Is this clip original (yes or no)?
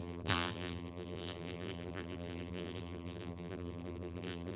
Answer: no